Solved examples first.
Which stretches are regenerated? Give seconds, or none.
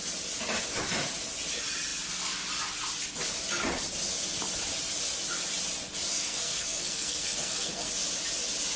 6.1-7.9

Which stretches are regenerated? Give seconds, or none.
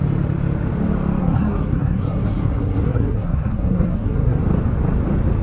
1.2-4.4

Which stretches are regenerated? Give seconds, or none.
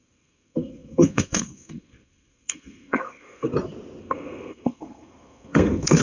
0.0-3.5; 4.0-6.0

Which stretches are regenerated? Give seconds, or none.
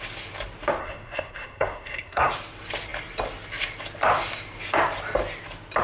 0.8-2.3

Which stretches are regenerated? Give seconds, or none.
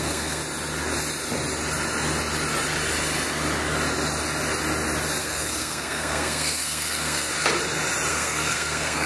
0.0-0.4; 5.2-7.3; 8.1-9.1